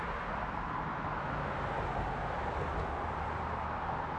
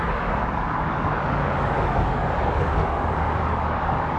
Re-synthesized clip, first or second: second